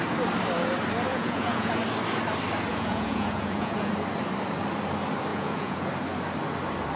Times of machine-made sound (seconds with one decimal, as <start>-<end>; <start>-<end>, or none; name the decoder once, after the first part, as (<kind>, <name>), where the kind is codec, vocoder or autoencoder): 1.1-1.7 (vocoder, Vocos); 2.7-3.9; 5.3-5.9